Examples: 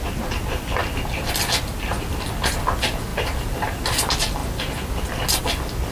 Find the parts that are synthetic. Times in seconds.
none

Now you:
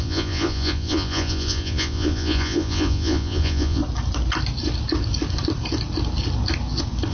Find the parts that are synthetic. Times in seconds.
0.0-3.8 (vocoder, Vocos)

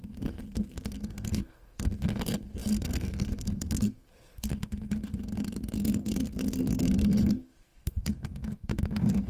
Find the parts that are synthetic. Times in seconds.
0.0-9.3 (codec, SNAC)

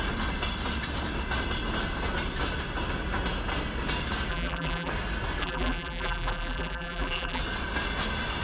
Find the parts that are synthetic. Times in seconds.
4.3-4.9 (vocoder, BigVGAN v2); 5.4-7.4

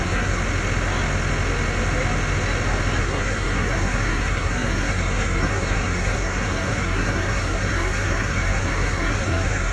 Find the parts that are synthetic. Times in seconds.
0.0-0.4 (codec, SNAC); 3.0-9.7

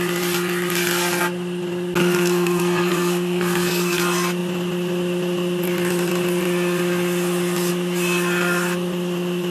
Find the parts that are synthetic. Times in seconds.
2.0-4.0 (codec, SNAC)